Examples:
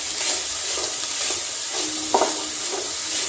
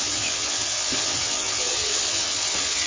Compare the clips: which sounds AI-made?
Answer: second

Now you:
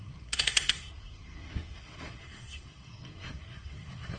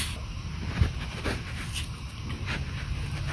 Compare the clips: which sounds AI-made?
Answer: first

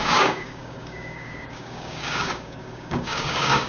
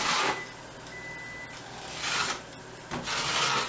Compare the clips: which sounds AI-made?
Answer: first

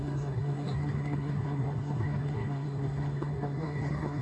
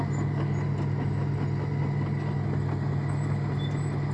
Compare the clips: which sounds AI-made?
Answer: first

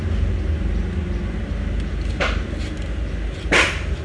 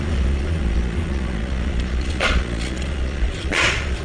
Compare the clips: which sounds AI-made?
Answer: second